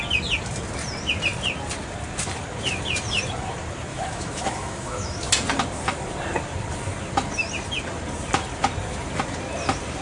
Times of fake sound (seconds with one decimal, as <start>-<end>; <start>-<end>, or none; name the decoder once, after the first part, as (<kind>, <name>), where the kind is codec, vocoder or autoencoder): 3.9-5.3 (autoencoder, DAC-VAE)